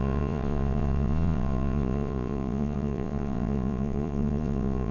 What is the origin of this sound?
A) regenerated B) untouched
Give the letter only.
A